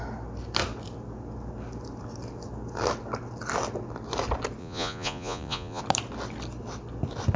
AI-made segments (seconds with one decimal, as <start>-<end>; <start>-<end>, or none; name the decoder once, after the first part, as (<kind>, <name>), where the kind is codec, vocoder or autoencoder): 4.6-5.8 (vocoder, Vocos)